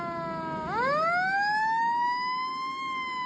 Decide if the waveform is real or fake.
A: real